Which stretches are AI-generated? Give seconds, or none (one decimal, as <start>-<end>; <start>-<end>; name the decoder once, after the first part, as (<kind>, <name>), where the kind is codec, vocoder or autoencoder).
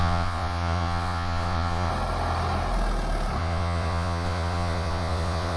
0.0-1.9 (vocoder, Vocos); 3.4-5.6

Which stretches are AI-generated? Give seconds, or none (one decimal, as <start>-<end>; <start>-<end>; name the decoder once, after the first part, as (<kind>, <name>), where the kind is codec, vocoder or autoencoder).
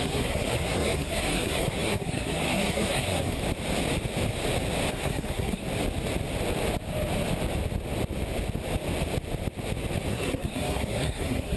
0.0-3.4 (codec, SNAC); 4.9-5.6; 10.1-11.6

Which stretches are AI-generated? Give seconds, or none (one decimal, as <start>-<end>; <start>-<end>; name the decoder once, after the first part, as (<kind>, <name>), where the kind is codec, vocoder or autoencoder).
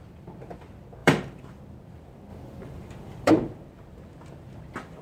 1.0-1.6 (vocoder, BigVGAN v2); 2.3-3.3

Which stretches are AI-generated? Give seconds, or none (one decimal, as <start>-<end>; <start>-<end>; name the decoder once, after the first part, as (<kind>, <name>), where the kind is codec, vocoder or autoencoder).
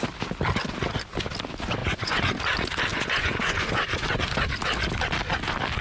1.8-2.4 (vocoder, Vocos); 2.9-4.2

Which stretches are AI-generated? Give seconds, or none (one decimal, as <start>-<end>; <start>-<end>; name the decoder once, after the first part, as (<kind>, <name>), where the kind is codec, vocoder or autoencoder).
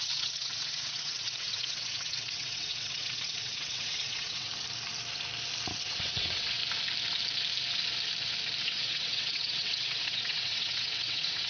0.0-4.5 (vocoder, WaveNeXt); 5.8-6.6; 8.6-11.5